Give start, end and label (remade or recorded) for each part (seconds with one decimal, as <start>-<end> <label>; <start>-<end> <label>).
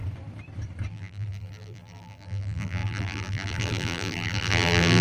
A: 0.0-0.9 recorded; 0.9-5.0 remade